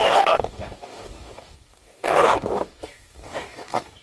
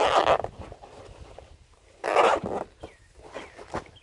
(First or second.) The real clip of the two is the second